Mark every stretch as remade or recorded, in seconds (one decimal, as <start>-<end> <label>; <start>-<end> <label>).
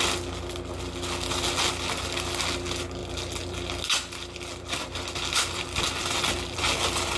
0.0-7.2 recorded